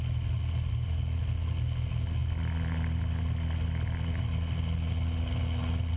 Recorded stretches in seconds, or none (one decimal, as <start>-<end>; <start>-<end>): 0.0-6.0